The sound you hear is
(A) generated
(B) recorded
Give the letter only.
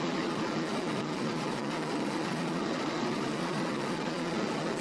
A